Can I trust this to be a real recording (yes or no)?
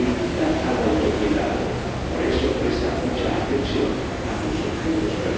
yes